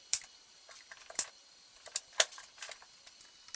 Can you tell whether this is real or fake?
fake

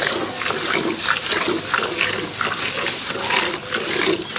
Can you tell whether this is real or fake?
real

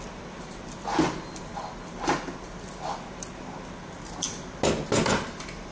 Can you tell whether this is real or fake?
real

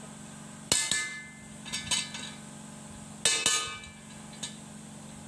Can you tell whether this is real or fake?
real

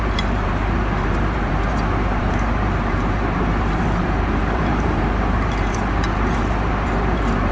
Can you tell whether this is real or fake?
fake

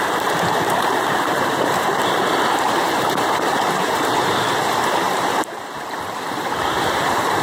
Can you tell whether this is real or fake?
fake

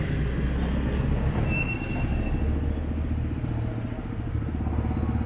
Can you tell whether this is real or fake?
real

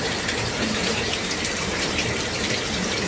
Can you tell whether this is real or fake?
fake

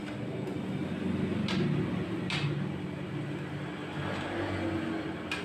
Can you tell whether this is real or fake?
real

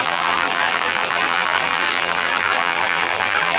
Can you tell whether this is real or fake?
fake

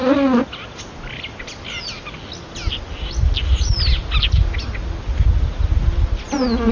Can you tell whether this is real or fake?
real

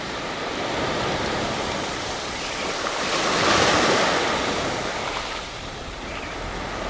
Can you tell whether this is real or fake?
fake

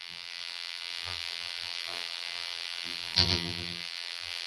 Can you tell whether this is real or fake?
fake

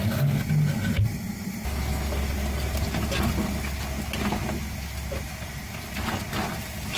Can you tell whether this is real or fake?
real